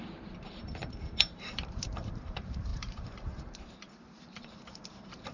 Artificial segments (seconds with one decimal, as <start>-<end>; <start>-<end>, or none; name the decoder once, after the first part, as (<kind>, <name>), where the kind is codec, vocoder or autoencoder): 0.0-5.3 (vocoder, BigVGAN v2)